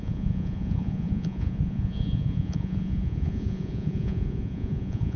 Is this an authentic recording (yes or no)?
no